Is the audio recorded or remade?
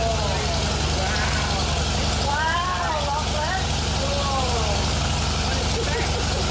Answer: recorded